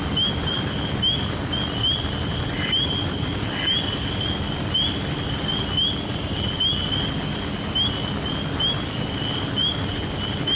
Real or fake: real